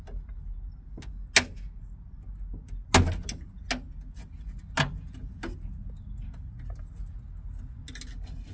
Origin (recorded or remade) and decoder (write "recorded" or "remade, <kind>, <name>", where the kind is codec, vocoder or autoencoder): recorded